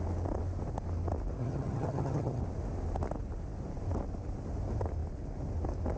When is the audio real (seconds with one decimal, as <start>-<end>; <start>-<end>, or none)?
0.0-1.4; 2.4-6.0